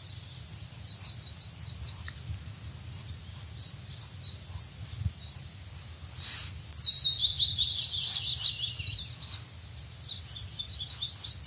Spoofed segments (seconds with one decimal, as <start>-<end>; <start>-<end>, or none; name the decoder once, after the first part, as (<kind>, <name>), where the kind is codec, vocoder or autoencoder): none